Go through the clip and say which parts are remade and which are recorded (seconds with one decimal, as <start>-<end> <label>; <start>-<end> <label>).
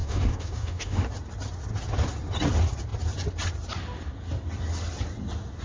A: 0.0-1.1 remade; 1.1-5.6 recorded